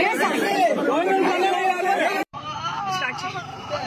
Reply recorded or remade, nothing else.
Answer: remade